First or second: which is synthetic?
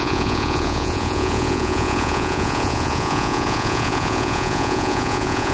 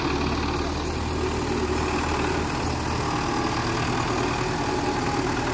first